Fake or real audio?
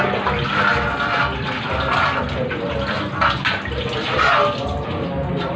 real